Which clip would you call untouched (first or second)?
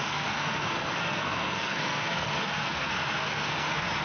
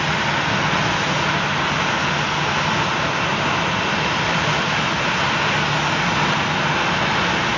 second